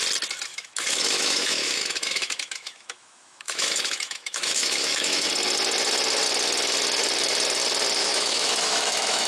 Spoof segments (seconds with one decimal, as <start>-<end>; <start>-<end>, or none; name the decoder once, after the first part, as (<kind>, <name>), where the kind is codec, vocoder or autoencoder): 0.5-5.3 (autoencoder, DAC-VAE); 8.0-9.3